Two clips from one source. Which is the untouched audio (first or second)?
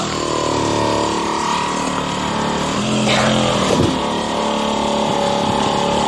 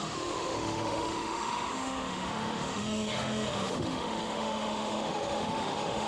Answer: first